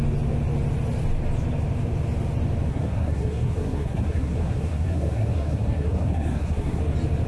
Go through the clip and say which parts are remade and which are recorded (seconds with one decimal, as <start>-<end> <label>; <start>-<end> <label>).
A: 0.0-2.7 recorded; 2.7-6.8 remade; 6.8-7.3 recorded